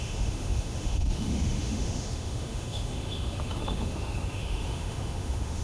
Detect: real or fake fake